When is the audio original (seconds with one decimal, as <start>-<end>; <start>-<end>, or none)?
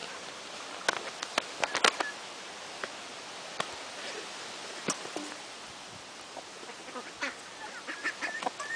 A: 0.0-8.8